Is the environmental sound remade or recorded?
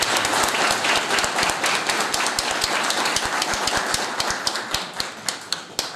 recorded